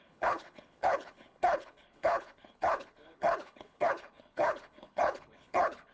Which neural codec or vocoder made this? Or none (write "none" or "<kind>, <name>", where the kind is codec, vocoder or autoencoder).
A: codec, HILCodec